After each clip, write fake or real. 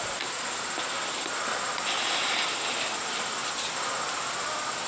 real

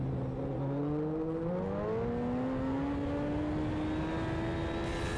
real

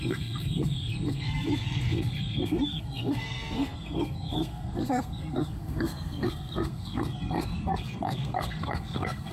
fake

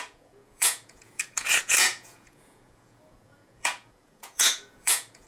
fake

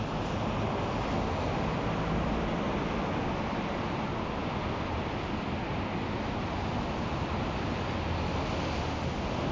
real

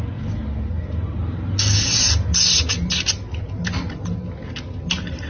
real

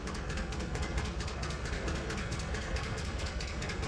fake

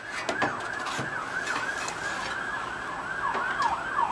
real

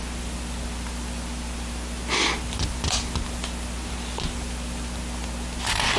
real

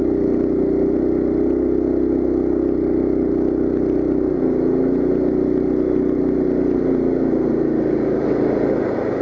real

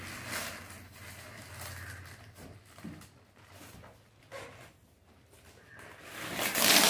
real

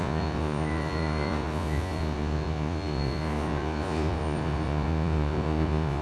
fake